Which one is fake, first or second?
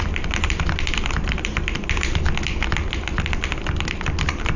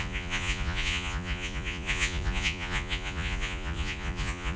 second